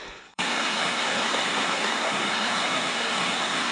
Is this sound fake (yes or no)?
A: yes